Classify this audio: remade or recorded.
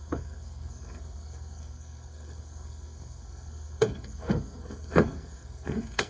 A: remade